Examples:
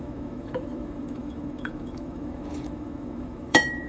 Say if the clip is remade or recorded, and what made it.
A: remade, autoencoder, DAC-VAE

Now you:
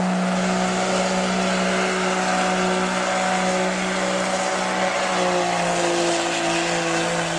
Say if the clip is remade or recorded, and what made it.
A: recorded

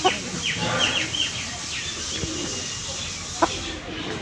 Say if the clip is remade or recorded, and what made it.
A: recorded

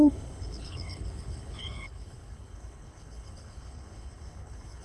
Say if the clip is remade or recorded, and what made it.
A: remade, codec, HILCodec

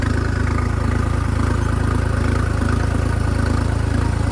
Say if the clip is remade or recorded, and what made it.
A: recorded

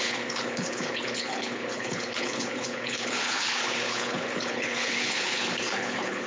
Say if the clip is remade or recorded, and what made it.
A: remade, codec, HILCodec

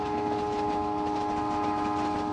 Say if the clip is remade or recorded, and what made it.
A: recorded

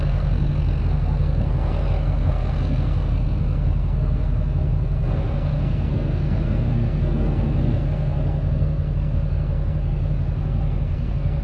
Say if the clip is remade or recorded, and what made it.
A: remade, codec, SNAC